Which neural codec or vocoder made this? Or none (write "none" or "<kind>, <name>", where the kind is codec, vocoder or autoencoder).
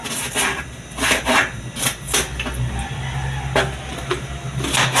none